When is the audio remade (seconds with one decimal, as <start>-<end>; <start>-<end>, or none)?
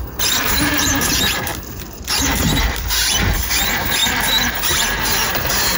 0.0-1.5; 2.1-4.0; 4.5-5.8